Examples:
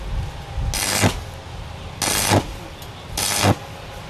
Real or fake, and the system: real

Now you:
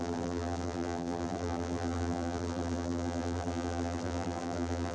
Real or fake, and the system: fake, vocoder, BigVGAN v2